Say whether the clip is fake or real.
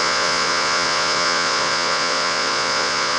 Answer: fake